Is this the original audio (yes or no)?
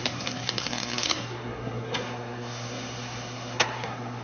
no